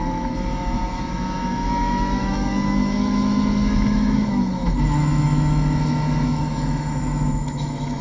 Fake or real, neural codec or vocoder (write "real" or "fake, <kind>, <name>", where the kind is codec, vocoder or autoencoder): fake, autoencoder, DAC-VAE